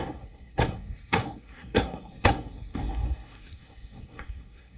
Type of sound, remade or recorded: remade